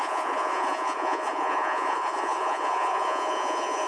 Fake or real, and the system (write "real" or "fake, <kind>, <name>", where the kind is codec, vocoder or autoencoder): fake, vocoder, Vocos